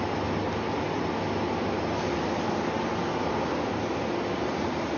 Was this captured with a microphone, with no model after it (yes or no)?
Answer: yes